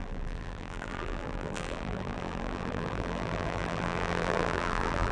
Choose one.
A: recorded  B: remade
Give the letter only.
B